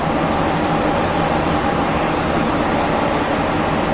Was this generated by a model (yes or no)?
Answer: no